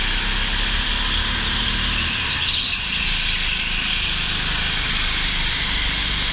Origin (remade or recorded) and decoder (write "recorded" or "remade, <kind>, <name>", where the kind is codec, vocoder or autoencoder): recorded